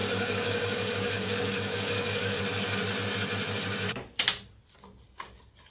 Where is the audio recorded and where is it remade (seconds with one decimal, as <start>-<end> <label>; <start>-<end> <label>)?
0.0-2.4 remade; 2.4-5.7 recorded